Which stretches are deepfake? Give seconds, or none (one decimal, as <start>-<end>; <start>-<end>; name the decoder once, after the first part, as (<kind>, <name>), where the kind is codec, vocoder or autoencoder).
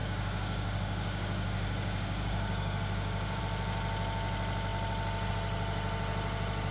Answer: 0.0-3.4 (codec, DAC)